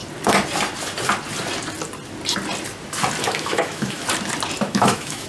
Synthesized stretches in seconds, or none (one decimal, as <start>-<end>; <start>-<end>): 3.2-4.0; 4.6-5.3